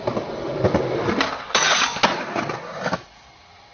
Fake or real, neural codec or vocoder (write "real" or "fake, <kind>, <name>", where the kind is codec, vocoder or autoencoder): real